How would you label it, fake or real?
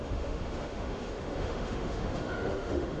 fake